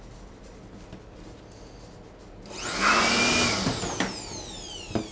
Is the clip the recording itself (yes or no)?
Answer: yes